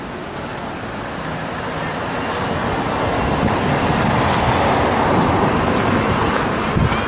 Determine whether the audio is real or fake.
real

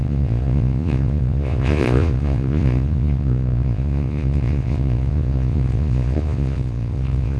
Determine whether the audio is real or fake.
fake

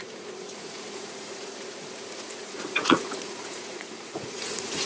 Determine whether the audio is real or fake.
fake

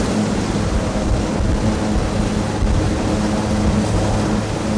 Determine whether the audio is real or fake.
real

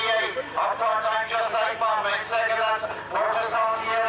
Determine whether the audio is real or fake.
real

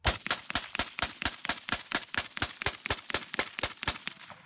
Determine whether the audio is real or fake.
real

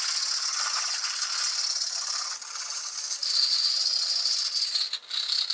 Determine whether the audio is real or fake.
real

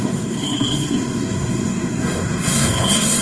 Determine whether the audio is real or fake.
fake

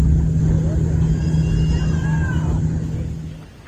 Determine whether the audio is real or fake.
real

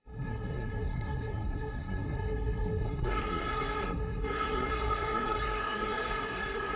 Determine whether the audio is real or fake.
fake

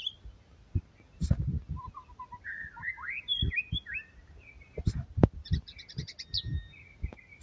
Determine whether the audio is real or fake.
real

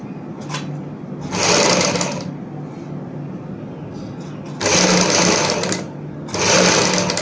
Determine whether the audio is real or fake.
real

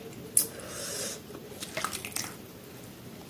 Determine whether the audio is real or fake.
real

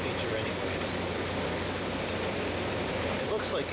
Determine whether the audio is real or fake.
fake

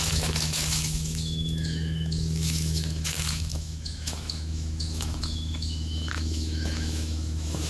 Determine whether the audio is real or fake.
fake